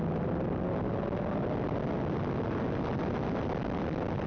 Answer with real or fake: real